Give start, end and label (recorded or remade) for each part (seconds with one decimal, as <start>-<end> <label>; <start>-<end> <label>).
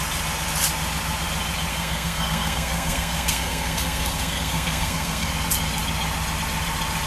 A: 0.0-1.7 recorded; 1.7-5.3 remade; 5.3-7.1 recorded